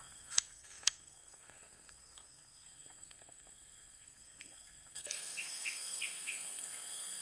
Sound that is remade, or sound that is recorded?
remade